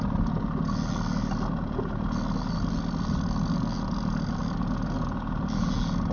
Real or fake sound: real